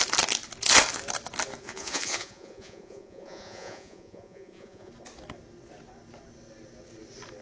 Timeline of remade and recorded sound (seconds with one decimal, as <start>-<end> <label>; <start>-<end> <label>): 0.0-1.6 recorded; 1.6-4.9 remade; 4.9-7.4 recorded